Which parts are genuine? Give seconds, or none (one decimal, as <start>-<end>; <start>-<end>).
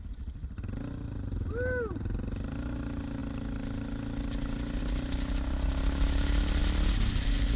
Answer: 0.0-7.6